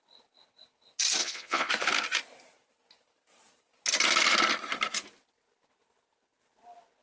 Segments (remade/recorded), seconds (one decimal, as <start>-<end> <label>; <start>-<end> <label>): 0.0-1.2 recorded; 1.2-1.7 remade; 1.7-7.0 recorded